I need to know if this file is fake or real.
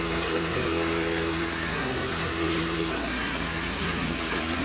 fake